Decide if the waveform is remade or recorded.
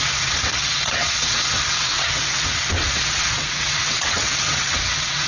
remade